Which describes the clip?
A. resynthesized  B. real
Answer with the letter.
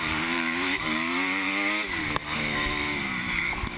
A